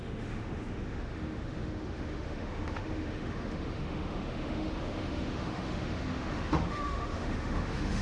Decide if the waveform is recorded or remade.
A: remade